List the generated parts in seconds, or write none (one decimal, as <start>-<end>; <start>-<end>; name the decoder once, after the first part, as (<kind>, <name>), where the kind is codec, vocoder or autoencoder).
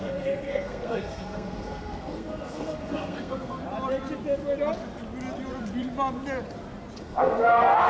0.0-3.6 (codec, SNAC); 7.0-7.9